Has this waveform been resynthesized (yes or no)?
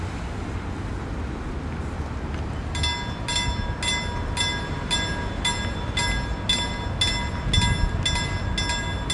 no